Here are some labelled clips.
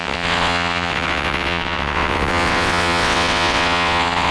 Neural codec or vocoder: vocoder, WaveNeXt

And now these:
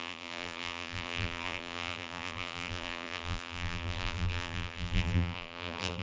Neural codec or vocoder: vocoder, BigVGAN v2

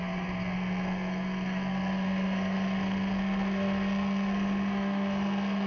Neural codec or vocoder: codec, SNAC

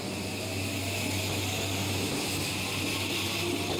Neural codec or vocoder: none